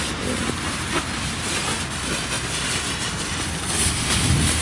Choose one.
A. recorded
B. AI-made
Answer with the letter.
A